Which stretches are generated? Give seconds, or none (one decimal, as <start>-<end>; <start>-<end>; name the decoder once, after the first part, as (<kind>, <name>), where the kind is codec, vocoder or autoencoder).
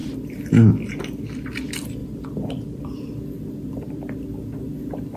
2.0-4.0 (vocoder, BigVGAN v2)